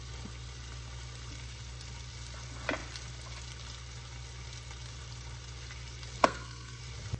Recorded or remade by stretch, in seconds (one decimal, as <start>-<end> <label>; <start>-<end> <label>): 0.0-6.2 recorded; 6.2-6.8 remade; 6.8-7.2 recorded